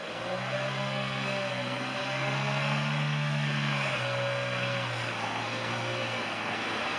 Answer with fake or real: fake